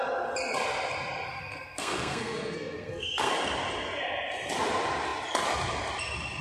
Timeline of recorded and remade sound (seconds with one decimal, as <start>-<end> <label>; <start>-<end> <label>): 0.0-1.3 recorded; 1.3-3.3 remade; 3.3-6.4 recorded